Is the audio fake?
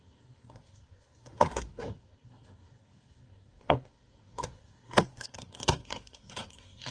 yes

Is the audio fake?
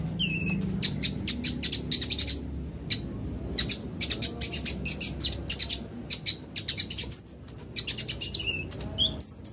no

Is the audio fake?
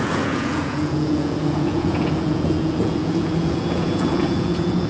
yes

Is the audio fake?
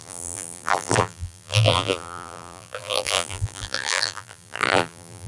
yes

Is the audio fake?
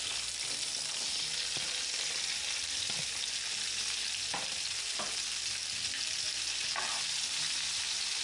no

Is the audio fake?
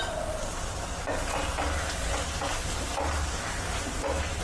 no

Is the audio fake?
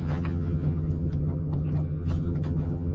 yes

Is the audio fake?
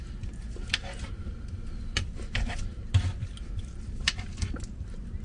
no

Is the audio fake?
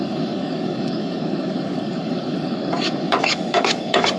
yes